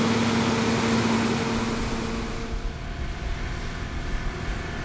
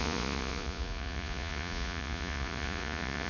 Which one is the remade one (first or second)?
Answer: second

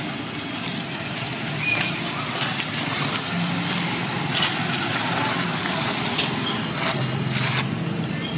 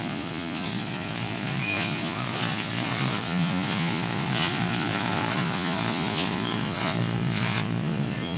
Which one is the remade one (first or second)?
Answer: second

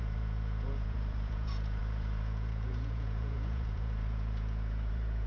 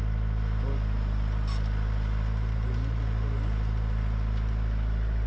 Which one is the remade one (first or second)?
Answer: first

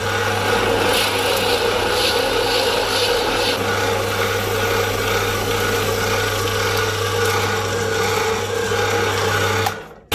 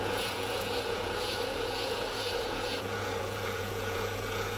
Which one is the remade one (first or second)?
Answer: second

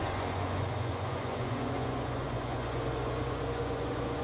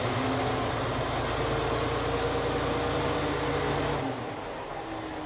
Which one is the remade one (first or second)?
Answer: first